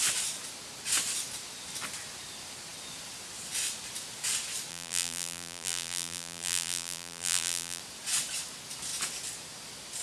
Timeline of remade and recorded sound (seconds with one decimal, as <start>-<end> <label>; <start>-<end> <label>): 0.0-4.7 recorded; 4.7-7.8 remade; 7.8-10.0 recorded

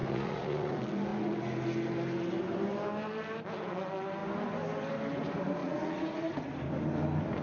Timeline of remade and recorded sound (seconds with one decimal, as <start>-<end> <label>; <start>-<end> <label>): 0.0-0.7 remade; 0.7-5.6 recorded; 5.6-6.4 remade; 6.4-7.4 recorded

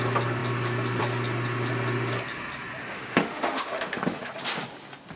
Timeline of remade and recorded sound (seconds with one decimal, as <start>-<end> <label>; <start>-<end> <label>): 0.0-2.8 recorded; 2.8-4.3 remade; 4.3-5.2 recorded

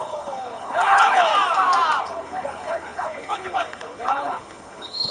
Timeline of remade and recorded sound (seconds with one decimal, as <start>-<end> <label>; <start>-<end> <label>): 0.0-1.3 remade; 1.3-2.0 recorded; 2.0-5.1 remade